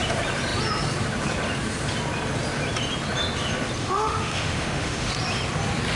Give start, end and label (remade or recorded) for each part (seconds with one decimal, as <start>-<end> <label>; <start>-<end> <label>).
0.0-3.8 recorded; 3.8-5.1 remade; 5.1-6.0 recorded